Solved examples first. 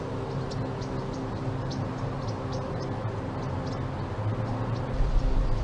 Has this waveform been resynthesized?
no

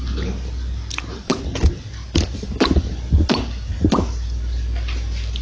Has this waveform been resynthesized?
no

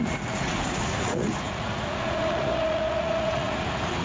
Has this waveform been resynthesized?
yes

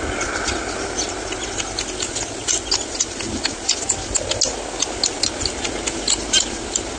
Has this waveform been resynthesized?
no